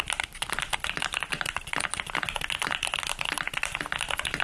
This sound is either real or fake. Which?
real